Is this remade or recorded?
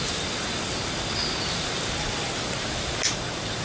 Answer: recorded